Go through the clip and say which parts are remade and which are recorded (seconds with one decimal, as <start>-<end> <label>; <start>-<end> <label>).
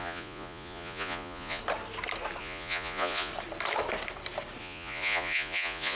0.0-1.6 remade; 1.6-2.4 recorded; 2.4-3.3 remade; 3.3-4.6 recorded; 4.6-6.0 remade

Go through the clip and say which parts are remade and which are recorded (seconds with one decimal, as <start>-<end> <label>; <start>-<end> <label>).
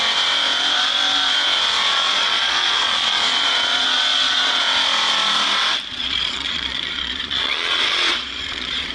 0.0-1.8 recorded; 1.8-4.6 remade; 4.6-5.9 recorded; 5.9-8.9 remade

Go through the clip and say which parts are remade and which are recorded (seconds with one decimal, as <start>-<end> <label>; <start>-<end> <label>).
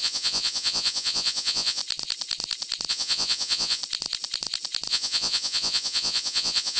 0.0-1.8 remade; 1.8-2.9 recorded; 2.9-3.8 remade; 3.8-4.9 recorded; 4.9-6.8 remade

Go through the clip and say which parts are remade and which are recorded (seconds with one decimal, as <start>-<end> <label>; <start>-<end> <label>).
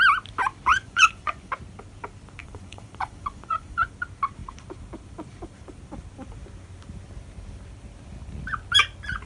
0.0-0.7 recorded; 0.7-1.5 remade; 1.5-2.4 recorded; 2.4-3.9 remade; 3.9-9.3 recorded